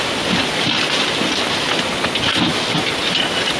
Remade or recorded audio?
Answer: recorded